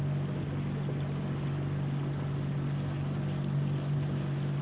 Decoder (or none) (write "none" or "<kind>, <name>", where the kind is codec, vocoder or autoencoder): none